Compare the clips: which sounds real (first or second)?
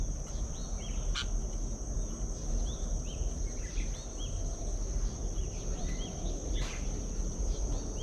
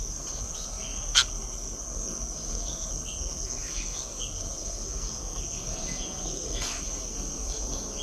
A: first